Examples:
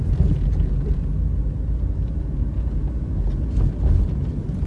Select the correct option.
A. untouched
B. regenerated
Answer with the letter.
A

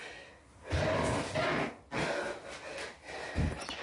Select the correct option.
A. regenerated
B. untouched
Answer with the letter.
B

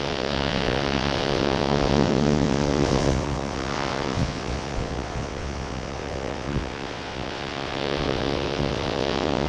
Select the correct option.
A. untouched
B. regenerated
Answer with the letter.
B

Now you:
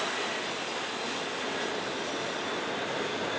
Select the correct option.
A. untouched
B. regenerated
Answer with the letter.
A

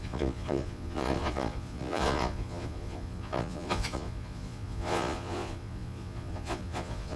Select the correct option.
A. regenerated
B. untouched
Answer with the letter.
A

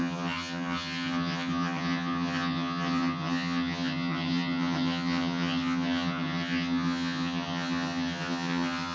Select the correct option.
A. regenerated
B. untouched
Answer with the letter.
A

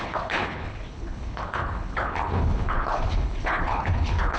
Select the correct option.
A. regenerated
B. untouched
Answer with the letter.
A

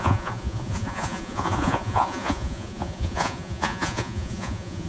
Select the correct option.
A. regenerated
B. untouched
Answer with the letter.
A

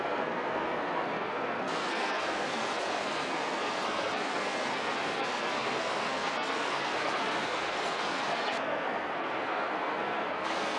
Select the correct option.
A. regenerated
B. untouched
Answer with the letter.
A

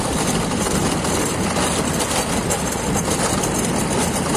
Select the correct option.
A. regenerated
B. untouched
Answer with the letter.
B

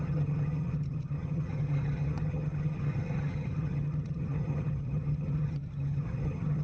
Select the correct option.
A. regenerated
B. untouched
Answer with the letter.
A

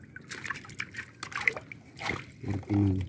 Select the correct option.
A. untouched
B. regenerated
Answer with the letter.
A